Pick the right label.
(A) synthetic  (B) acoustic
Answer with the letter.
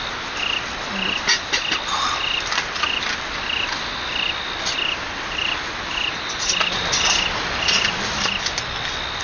B